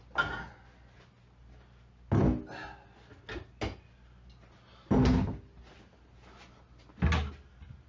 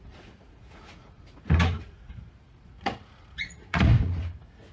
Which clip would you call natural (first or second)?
first